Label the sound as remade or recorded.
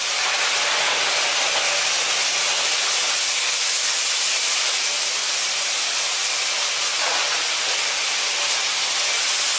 recorded